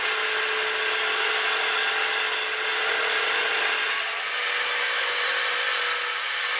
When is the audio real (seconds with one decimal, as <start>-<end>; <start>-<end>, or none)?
0.0-6.6